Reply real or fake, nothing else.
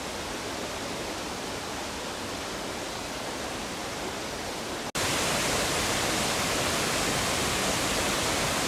real